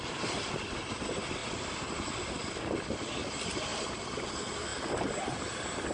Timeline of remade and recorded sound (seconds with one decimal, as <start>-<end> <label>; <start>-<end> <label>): 0.0-5.9 recorded